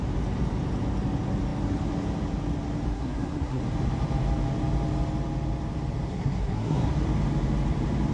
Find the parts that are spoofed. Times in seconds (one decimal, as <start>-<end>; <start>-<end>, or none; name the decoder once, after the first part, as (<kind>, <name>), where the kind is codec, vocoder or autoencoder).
2.9-3.6 (codec, SNAC); 6.1-6.9